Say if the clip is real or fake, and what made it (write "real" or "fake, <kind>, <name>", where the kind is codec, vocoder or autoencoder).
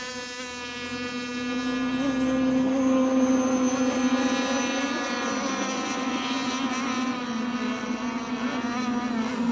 real